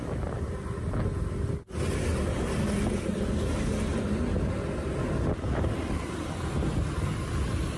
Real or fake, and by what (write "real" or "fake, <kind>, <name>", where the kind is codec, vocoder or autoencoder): real